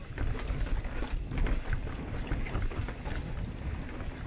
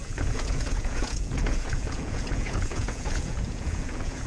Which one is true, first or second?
first